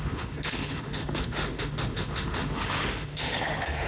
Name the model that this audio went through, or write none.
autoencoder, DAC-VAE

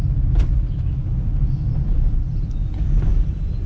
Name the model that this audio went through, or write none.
none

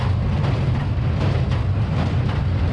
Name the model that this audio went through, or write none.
none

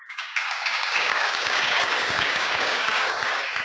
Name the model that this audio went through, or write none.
codec, DAC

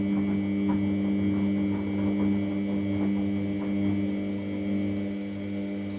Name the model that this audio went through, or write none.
none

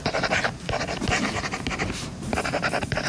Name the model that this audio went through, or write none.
vocoder, BigVGAN v2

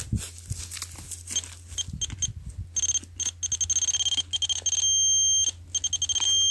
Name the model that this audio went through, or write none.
none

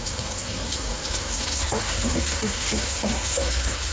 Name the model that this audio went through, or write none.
codec, SNAC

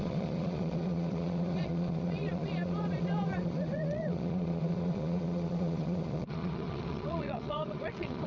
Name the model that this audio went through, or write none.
vocoder, Vocos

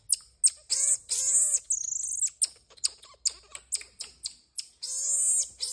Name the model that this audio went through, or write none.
none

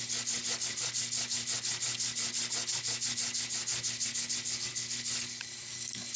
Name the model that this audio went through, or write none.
none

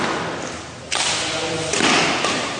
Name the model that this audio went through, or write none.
none